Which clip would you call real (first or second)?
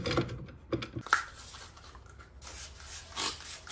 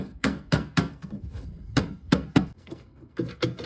first